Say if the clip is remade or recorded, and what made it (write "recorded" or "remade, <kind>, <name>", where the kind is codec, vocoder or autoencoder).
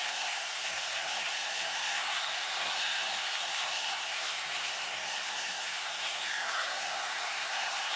remade, codec, SNAC